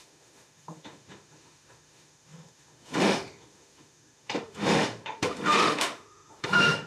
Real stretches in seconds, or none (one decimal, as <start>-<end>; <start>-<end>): none